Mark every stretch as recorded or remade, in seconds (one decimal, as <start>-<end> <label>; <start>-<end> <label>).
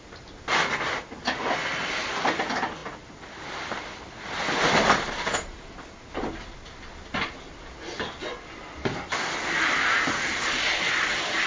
0.0-11.5 recorded